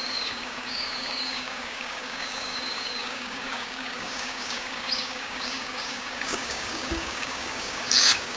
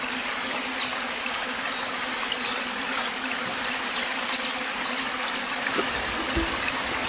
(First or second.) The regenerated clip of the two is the first